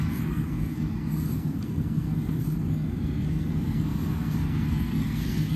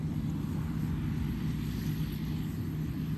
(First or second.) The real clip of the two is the second